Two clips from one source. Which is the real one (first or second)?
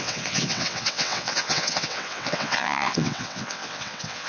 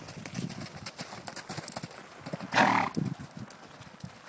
second